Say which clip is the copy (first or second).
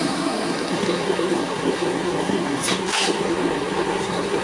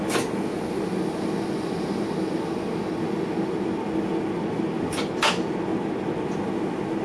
first